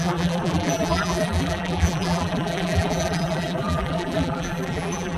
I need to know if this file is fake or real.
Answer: fake